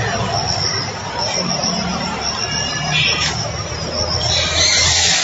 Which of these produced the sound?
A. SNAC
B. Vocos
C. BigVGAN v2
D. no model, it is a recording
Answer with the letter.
D